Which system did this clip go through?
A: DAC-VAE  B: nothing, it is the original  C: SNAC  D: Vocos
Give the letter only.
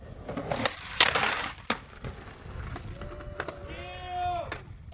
B